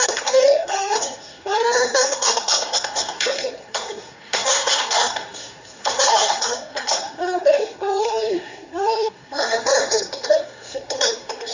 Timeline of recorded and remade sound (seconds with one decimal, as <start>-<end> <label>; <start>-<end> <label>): 0.0-11.5 remade